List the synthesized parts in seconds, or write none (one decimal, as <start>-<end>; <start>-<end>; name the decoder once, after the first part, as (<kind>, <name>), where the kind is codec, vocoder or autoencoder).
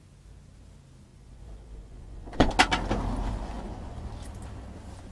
1.1-2.5 (vocoder, Vocos); 3.3-4.1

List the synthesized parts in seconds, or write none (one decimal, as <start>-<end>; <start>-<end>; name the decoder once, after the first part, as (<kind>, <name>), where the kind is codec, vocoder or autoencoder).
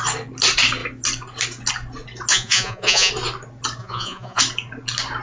2.3-3.1 (vocoder, Vocos); 3.8-4.4